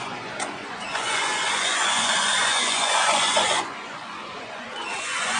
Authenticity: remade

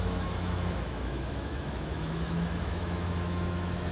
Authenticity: remade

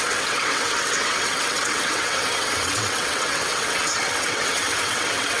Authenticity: remade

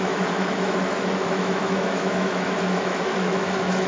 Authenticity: remade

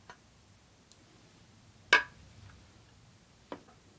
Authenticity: recorded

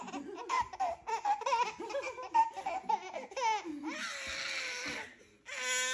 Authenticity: recorded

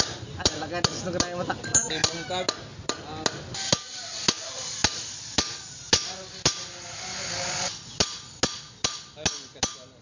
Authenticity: recorded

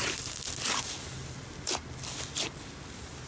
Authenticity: recorded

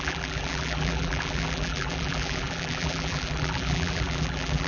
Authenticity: remade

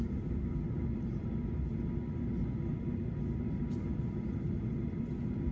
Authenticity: recorded